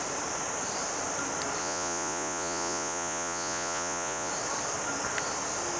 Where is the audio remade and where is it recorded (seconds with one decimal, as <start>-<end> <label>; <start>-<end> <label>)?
0.0-1.6 recorded; 1.6-4.3 remade; 4.3-5.8 recorded